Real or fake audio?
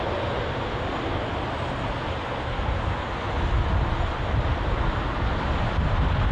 real